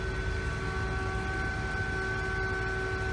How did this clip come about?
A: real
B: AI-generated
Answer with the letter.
A